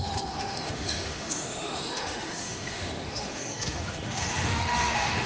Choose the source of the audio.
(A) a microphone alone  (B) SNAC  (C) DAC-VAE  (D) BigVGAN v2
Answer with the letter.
C